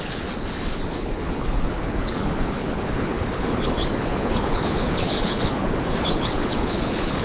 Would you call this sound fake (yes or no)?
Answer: yes